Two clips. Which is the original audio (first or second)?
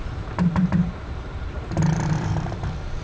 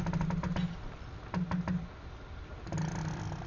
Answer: second